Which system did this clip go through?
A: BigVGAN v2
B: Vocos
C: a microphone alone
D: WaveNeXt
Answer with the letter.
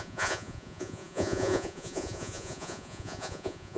B